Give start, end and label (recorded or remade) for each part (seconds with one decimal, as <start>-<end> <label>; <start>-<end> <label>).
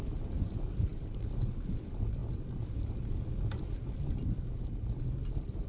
0.0-5.7 recorded